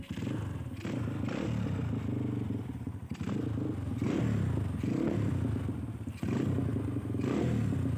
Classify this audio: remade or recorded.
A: recorded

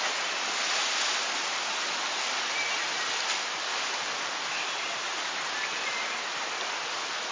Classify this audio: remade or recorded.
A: recorded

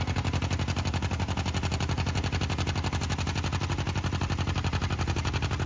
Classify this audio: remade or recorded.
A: recorded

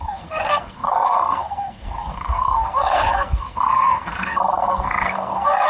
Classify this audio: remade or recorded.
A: remade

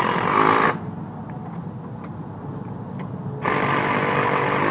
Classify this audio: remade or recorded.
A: recorded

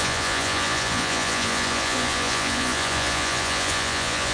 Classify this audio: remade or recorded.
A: remade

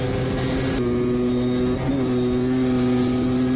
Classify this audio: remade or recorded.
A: recorded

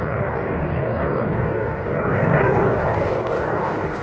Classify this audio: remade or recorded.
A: remade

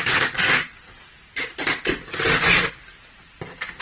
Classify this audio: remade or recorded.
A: remade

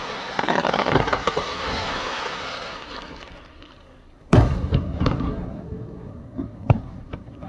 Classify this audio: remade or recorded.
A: remade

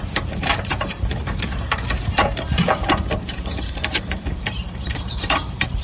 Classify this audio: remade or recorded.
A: remade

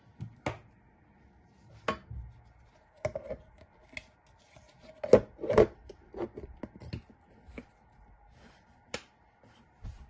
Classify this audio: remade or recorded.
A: recorded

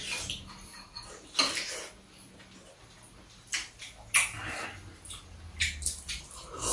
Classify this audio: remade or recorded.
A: recorded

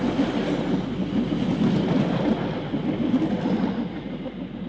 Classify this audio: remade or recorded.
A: recorded